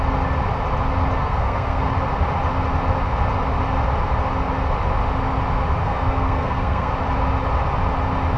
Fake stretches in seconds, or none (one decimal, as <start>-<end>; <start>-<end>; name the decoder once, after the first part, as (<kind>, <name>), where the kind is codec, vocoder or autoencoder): 1.2-1.8 (codec, SNAC); 5.8-6.9